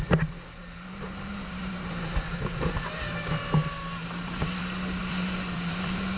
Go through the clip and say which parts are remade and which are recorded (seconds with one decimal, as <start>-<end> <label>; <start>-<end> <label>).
0.0-0.6 recorded; 0.6-3.6 remade; 3.6-4.0 recorded; 4.0-4.6 remade; 4.6-5.0 recorded; 5.0-6.2 remade